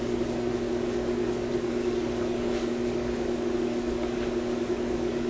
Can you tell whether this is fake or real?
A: fake